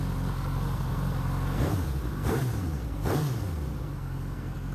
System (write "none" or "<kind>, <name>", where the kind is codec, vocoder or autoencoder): codec, SNAC